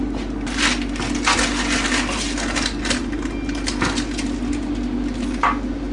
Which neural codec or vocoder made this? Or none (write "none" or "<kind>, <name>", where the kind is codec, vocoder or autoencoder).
none